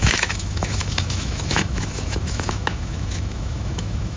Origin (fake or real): fake